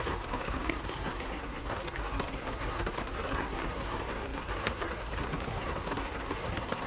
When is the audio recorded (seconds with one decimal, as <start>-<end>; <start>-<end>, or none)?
none